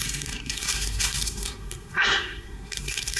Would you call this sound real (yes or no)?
no